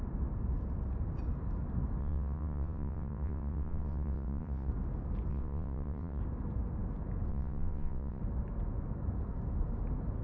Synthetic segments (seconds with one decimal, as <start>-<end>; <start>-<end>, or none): 2.0-4.7; 5.3-6.2; 7.3-8.2